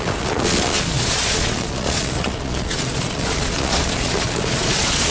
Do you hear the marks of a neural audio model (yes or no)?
yes